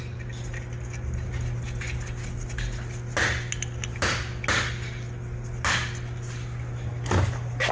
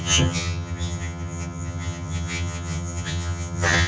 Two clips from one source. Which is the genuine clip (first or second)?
first